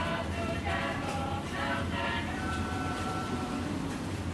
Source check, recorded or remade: remade